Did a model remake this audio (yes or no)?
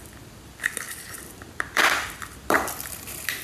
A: yes